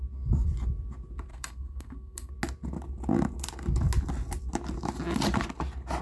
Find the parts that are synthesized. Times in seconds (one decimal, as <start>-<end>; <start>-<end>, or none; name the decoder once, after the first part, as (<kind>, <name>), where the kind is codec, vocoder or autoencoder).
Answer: 1.3-2.3 (codec, SNAC)